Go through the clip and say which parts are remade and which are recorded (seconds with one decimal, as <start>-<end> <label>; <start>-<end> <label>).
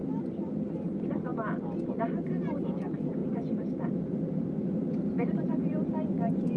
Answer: 0.0-0.7 recorded; 0.7-1.3 remade; 1.3-1.9 recorded; 1.9-6.6 remade